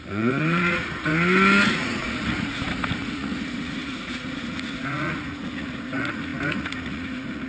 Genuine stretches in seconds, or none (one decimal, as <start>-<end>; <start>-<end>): 1.1-1.7